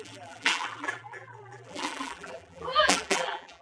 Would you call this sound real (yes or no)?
no